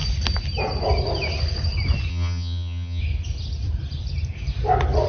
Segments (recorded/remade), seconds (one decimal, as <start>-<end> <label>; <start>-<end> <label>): 0.0-2.1 recorded; 2.1-3.0 remade; 3.0-5.1 recorded